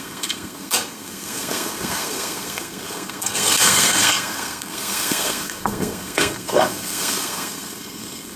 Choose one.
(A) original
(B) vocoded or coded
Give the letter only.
B